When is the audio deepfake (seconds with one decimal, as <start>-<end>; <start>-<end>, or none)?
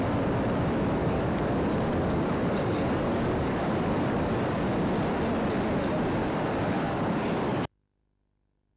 1.0-4.6; 6.2-8.0